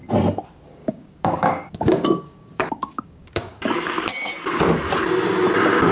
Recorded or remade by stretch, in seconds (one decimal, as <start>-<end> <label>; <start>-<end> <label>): 0.0-0.8 recorded; 0.8-4.3 remade; 4.3-5.9 recorded